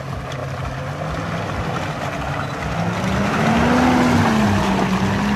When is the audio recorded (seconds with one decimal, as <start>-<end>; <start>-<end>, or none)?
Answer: 0.0-5.4